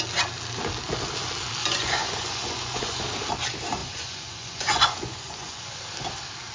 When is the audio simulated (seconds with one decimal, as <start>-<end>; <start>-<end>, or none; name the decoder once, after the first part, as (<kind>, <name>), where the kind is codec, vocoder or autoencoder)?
1.6-3.0 (vocoder, Vocos); 3.8-5.8